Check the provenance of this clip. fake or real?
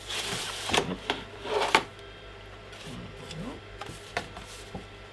real